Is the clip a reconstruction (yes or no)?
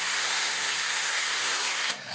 yes